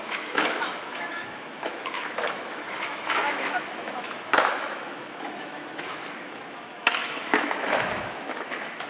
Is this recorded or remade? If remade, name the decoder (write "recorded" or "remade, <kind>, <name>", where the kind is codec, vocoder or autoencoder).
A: remade, autoencoder, DAC-VAE